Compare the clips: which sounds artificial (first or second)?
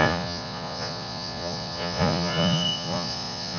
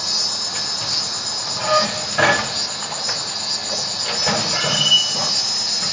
first